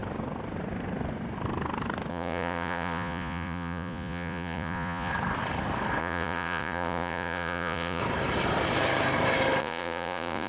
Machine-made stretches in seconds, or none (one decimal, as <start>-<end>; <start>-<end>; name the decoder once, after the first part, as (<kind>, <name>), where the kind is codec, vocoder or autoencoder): 2.1-5.1 (vocoder, Vocos); 6.0-8.0; 9.6-10.5